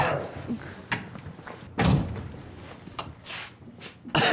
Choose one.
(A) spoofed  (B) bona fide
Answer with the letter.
B